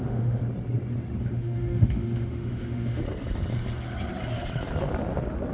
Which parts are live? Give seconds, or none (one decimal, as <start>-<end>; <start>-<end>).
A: 0.4-1.2; 3.0-5.5